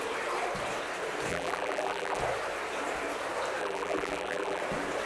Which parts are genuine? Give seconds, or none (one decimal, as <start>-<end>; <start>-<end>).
0.0-1.3; 2.2-3.6; 4.6-5.1